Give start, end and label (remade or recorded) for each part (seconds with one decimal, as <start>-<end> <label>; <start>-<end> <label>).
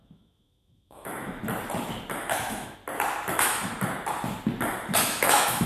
0.0-1.4 remade; 1.4-2.2 recorded; 2.2-2.8 remade; 2.8-3.3 recorded; 3.3-3.7 remade; 3.7-5.0 recorded; 5.0-5.7 remade